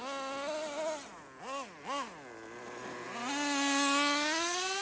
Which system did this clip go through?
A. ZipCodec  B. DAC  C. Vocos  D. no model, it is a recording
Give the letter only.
D